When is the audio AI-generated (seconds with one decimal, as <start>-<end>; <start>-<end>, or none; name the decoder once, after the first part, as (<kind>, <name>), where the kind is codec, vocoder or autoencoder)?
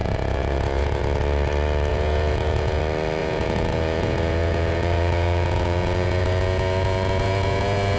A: 0.0-1.0 (vocoder, Vocos); 1.9-2.8; 3.2-8.0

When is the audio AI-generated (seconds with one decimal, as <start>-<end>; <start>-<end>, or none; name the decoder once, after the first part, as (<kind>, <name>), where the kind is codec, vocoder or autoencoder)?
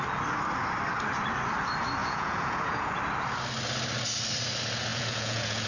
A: 2.0-3.0 (vocoder, Vocos); 4.9-5.7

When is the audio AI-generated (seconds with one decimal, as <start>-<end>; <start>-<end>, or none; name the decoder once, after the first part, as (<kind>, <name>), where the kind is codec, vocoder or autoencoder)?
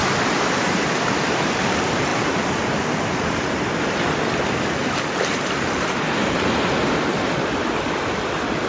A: 0.0-0.9 (vocoder, BigVGAN v2); 4.8-6.0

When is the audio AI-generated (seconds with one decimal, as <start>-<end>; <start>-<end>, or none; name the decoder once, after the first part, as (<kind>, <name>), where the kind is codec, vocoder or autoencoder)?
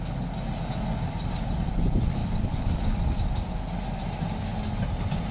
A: none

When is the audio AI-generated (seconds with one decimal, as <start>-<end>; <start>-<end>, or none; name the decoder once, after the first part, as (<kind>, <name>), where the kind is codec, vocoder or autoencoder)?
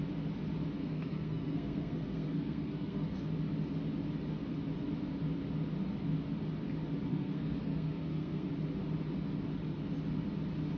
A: 0.8-3.2 (codec, SNAC); 7.1-8.5